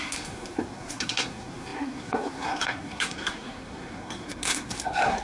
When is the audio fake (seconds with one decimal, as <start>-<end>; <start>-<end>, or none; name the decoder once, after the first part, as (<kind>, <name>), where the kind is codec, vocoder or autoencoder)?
0.0-5.2 (codec, SNAC)